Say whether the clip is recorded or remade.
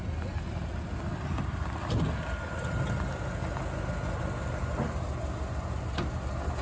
recorded